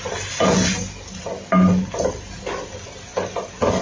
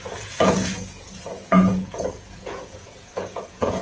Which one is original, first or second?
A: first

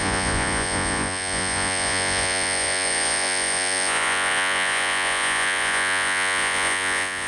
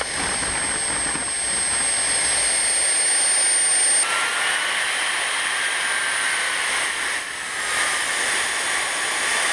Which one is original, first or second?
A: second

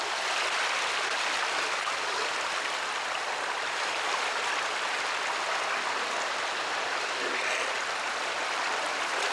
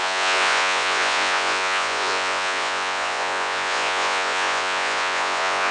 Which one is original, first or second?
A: first